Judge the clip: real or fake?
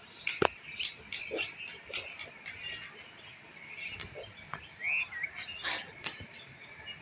real